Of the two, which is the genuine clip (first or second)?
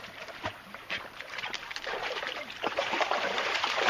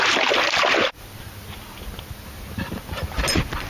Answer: second